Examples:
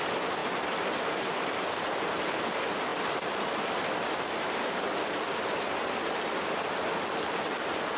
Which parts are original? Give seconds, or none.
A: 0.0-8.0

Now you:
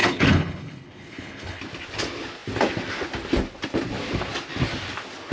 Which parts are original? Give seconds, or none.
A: 1.6-5.3

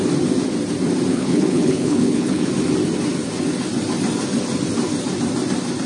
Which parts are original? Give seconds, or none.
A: 0.0-1.1; 2.5-5.9

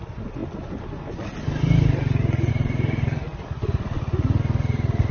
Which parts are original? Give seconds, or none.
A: 0.0-5.1

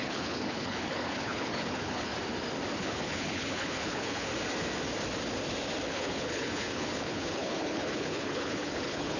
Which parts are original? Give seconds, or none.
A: 2.1-2.8; 4.3-5.9

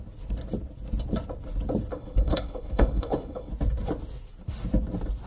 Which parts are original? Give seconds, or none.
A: 0.0-1.9; 3.5-5.3